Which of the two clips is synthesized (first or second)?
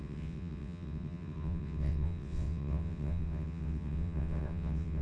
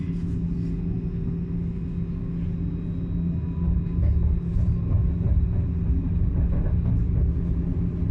first